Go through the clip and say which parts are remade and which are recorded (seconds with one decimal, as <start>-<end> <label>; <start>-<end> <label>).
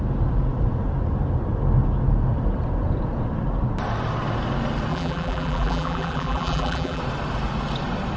0.0-4.9 recorded; 4.9-7.0 remade; 7.0-8.2 recorded